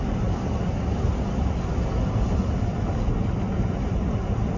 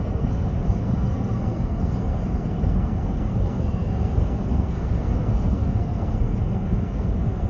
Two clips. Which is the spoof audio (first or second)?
second